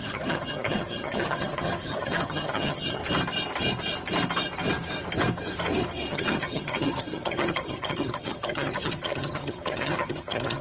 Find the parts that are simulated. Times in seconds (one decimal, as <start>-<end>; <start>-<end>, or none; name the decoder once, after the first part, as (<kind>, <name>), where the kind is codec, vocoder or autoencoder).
0.0-3.0 (vocoder, HiFi-GAN); 6.1-10.6